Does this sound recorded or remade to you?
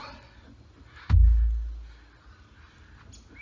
recorded